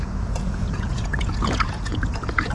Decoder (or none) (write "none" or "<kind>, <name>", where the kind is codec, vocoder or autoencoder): vocoder, Vocos